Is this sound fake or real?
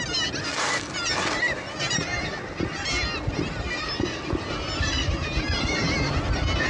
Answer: real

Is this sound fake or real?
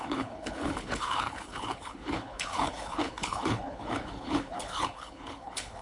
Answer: fake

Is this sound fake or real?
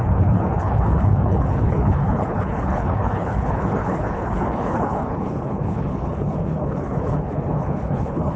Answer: fake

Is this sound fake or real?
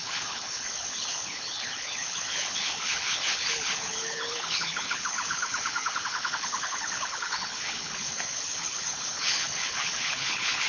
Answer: fake